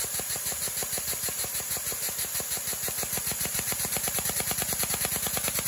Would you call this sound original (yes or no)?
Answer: yes